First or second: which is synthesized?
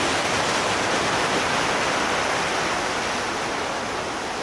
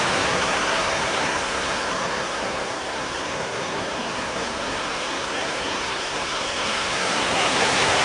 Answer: second